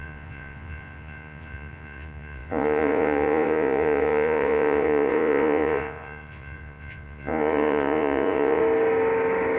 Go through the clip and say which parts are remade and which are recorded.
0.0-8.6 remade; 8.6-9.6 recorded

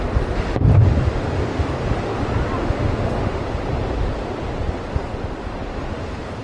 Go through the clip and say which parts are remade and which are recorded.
0.0-2.6 recorded; 2.6-3.4 remade; 3.4-6.4 recorded